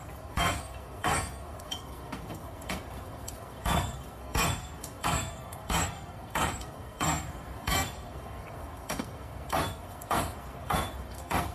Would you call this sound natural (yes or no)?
no